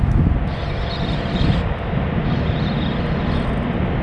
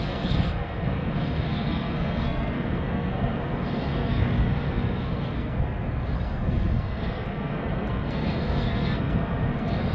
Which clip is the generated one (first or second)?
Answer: second